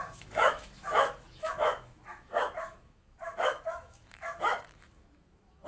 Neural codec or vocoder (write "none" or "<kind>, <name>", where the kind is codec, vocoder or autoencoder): autoencoder, DAC-VAE